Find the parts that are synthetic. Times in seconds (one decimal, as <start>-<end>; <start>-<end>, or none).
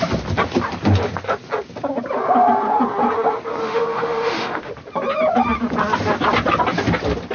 3.6-4.7